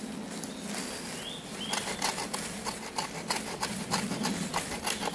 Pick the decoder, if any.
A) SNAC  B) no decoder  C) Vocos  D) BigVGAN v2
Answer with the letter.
B